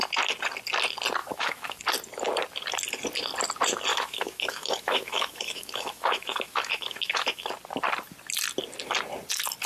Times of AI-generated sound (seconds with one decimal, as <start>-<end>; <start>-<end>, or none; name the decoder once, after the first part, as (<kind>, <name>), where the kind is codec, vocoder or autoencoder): 1.2-1.8 (autoencoder, DAC-VAE); 3.9-7.5